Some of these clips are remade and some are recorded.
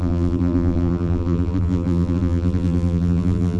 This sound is remade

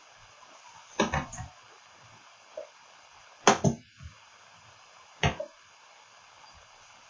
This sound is recorded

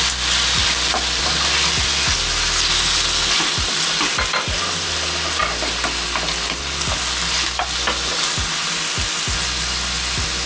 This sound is recorded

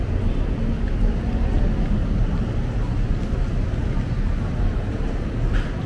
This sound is recorded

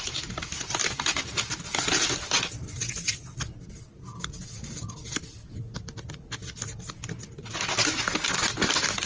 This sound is recorded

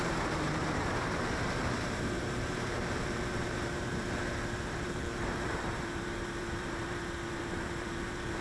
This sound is remade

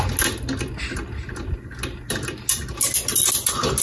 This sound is recorded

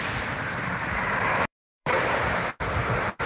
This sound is remade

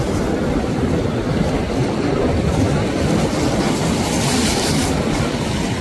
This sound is recorded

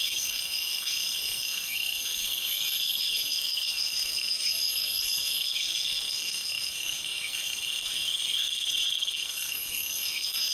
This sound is remade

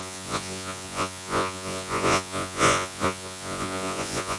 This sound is remade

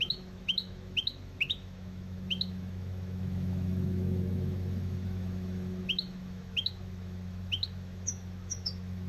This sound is remade